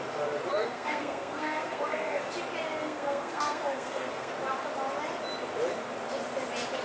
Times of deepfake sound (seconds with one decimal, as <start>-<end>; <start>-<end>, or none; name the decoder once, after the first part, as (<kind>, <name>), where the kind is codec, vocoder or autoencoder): 0.5-2.2 (codec, SNAC); 2.8-4.3